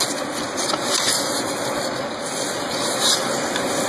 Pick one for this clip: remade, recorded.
recorded